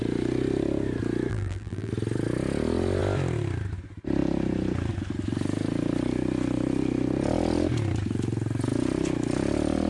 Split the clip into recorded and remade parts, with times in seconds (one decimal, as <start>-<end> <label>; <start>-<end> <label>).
0.0-1.3 recorded; 1.3-1.9 remade; 1.9-9.9 recorded